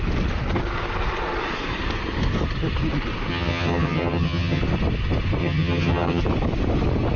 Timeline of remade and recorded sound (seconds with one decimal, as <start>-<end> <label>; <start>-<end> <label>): 0.0-3.3 recorded; 3.3-4.6 remade; 4.6-5.4 recorded; 5.4-6.2 remade; 6.2-7.2 recorded